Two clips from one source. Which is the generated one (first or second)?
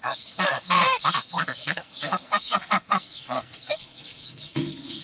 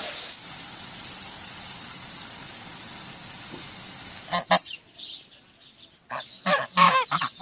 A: first